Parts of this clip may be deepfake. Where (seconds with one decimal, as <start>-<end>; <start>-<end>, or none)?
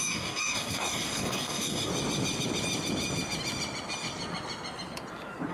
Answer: 0.0-1.9